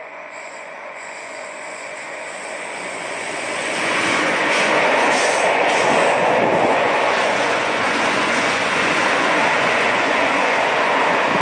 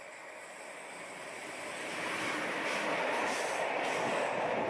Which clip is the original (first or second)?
second